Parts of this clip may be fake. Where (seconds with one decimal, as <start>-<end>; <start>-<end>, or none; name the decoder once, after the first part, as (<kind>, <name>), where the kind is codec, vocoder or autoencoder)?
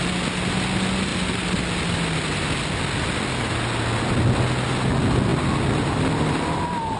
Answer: none